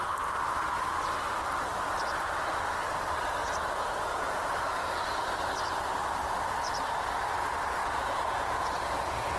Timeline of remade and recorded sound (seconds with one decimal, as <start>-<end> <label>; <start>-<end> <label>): 0.0-3.4 recorded; 3.4-4.4 remade; 4.4-7.8 recorded; 7.8-9.4 remade